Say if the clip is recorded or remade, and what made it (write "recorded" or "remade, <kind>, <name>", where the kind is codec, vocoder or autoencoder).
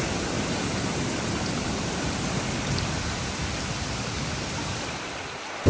recorded